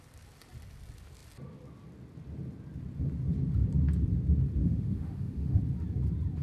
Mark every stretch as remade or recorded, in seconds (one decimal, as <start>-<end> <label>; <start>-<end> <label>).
0.0-4.6 recorded; 4.6-5.6 remade; 5.6-6.4 recorded